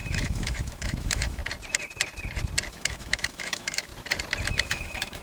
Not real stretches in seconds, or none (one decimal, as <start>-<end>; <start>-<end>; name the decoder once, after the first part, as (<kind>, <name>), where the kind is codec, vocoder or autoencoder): 0.0-1.4 (autoencoder, DAC-VAE); 2.7-3.9; 4.5-5.2